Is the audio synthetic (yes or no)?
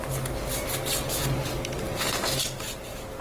no